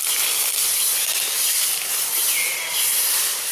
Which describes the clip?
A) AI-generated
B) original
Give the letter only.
B